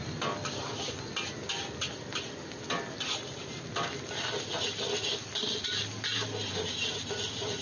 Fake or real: real